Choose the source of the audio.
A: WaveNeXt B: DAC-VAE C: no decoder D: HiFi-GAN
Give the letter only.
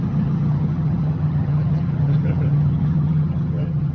D